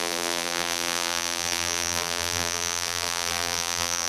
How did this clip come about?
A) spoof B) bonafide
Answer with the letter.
A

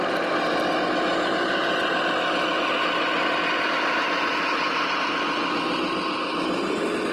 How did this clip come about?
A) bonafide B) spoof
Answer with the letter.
A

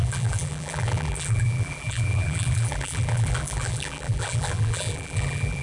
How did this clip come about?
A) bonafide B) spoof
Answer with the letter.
B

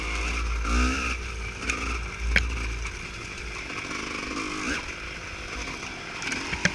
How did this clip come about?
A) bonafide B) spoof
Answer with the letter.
A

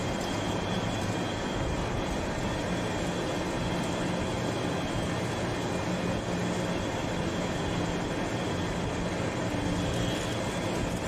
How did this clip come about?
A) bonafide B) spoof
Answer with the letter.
A